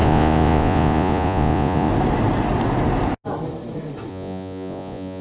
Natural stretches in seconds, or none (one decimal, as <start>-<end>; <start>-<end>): 1.9-4.1